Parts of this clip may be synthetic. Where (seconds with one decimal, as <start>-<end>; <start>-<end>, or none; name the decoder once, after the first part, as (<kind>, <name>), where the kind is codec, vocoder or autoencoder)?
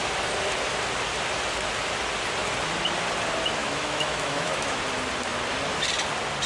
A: 3.6-4.8 (autoencoder, DAC-VAE)